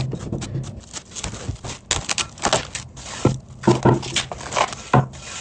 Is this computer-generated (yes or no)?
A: no